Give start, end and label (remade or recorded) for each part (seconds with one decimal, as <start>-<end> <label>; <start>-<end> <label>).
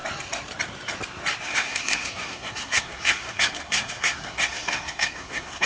0.0-1.4 recorded; 1.4-5.7 remade